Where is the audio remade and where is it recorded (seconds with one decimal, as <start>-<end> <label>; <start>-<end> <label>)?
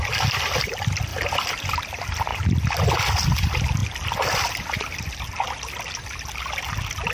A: 0.0-7.1 recorded